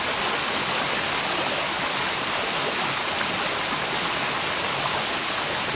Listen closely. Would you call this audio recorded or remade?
recorded